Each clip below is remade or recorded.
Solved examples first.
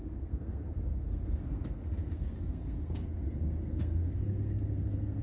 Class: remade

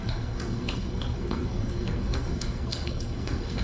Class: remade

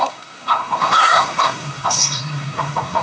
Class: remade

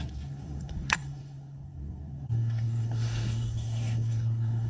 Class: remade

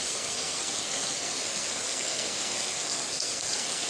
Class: remade